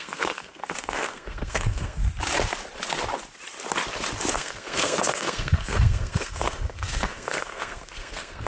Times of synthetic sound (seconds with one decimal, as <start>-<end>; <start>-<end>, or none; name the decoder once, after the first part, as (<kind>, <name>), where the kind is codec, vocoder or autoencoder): 0.0-2.0 (codec, SNAC); 4.3-8.5